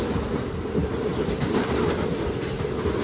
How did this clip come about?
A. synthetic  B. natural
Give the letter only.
B